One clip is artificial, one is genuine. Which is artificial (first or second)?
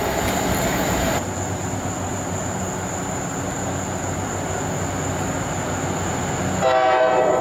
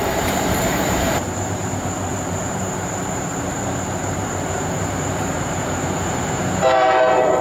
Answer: second